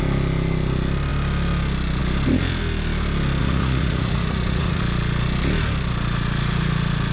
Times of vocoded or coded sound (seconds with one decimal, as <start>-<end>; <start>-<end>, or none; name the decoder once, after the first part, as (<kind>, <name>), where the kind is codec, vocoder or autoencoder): 3.4-4.8 (vocoder, Vocos)